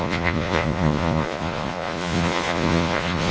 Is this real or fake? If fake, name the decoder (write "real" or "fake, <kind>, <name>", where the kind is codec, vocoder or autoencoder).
fake, vocoder, Vocos